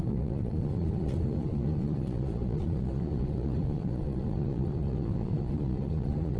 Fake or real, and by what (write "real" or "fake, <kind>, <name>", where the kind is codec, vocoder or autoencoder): fake, vocoder, Vocos